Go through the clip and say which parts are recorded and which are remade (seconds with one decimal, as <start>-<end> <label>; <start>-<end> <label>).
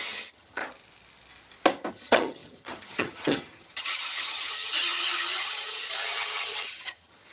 0.0-0.6 remade; 0.6-1.9 recorded; 1.9-7.3 remade